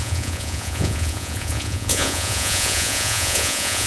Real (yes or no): no